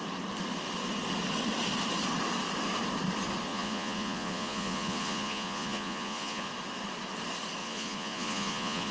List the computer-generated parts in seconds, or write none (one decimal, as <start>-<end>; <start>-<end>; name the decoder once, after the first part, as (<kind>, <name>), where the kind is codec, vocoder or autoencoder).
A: 3.5-6.5 (vocoder, Vocos); 7.6-8.9